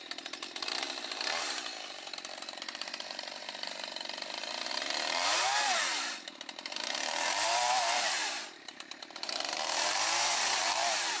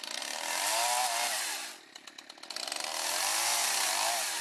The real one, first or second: second